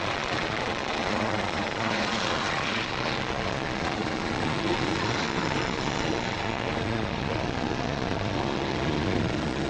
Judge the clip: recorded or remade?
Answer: remade